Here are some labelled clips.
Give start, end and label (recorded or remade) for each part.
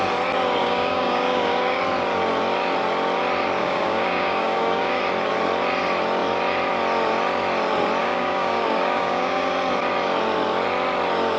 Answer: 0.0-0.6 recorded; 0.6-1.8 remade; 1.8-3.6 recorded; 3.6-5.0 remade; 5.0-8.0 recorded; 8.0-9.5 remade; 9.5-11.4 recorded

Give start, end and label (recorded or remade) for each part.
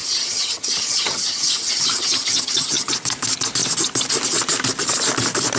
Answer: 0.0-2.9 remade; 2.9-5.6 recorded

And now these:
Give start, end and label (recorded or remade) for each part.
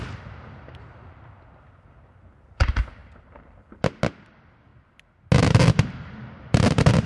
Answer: 0.0-3.0 remade; 3.0-4.3 recorded; 4.3-4.7 remade; 4.7-5.4 recorded; 5.4-7.1 remade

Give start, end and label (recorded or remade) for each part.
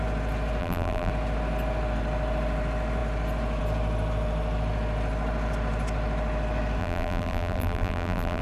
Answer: 0.0-0.6 recorded; 0.6-1.1 remade; 1.1-6.8 recorded; 6.8-8.4 remade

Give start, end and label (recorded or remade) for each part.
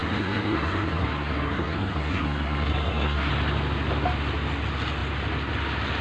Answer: 0.0-3.3 remade; 3.3-6.0 recorded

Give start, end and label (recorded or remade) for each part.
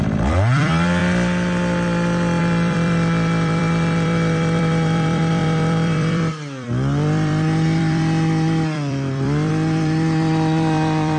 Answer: 0.0-1.0 remade; 1.0-2.4 recorded; 2.4-11.2 remade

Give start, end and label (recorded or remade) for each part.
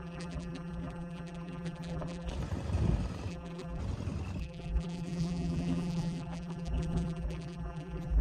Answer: 0.0-2.3 remade; 2.3-3.3 recorded; 3.3-3.8 remade; 3.8-4.4 recorded; 4.4-8.2 remade